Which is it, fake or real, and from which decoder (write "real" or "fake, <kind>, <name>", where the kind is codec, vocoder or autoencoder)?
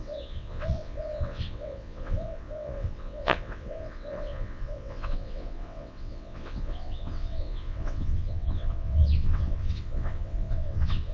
fake, vocoder, WaveNeXt